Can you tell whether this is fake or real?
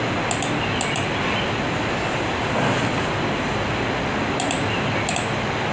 real